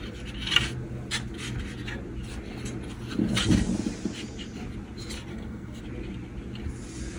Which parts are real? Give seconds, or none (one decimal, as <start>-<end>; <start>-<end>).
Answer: 0.0-5.3; 5.8-7.2